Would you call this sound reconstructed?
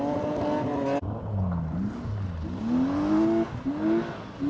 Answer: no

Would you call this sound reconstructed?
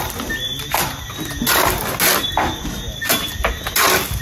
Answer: no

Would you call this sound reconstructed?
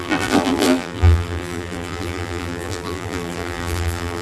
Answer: yes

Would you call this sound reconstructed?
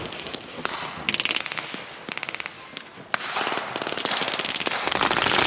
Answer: no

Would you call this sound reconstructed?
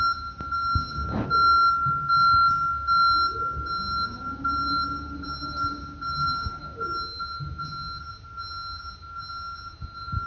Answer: no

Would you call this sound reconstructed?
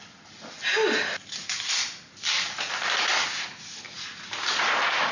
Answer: no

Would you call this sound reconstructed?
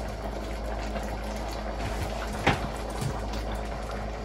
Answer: no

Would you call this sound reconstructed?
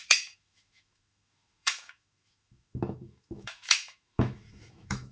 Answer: yes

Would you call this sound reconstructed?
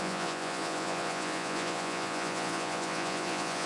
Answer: yes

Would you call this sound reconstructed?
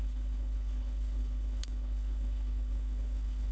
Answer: yes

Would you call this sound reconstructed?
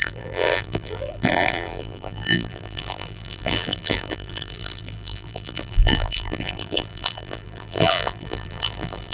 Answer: yes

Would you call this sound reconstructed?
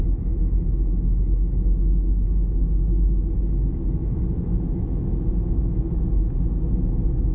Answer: yes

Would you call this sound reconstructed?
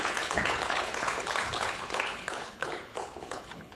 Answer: yes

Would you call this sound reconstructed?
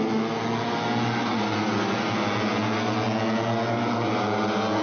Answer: no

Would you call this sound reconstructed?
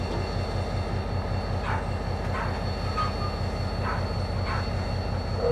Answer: no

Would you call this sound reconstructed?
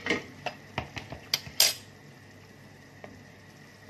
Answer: no